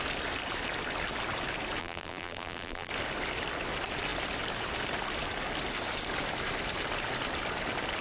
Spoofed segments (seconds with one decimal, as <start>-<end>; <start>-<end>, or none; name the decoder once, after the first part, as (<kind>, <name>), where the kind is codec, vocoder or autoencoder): 1.8-2.9 (vocoder, BigVGAN v2)